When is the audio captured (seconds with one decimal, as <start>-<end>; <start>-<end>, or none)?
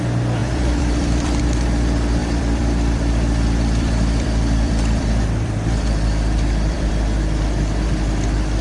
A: 0.0-0.4; 1.4-2.2; 6.9-8.6